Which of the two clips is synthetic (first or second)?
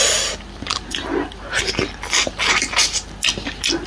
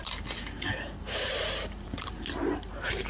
second